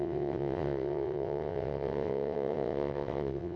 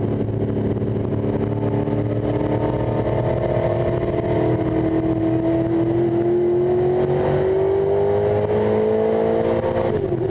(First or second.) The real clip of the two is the second